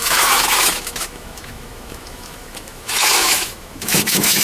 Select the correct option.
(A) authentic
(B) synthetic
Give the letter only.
B